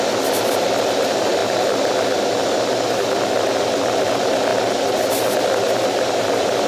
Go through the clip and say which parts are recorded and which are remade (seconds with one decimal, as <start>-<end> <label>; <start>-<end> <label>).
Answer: 0.0-6.7 recorded